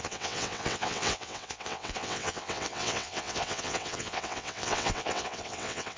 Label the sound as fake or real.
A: fake